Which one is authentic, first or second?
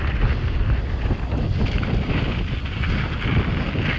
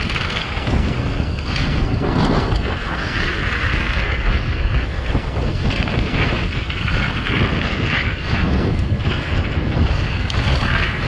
first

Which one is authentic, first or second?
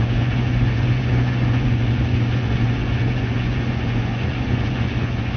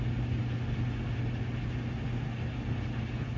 second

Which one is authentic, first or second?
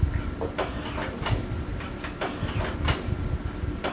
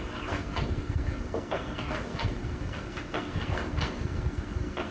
first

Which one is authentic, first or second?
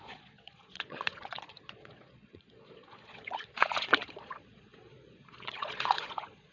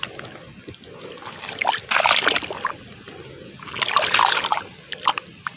second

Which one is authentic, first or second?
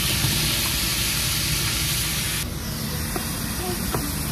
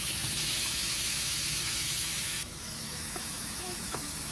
first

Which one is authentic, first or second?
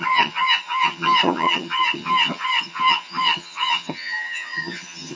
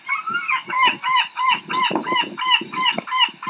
second